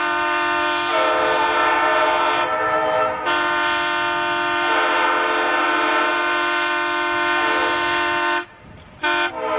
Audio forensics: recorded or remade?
recorded